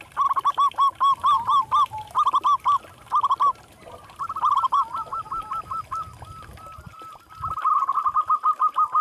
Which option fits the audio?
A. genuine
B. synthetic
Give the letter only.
A